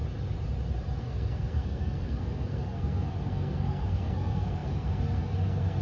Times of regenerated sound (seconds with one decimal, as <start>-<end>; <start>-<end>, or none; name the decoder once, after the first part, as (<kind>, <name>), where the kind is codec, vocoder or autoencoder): 1.0-5.8 (codec, SNAC)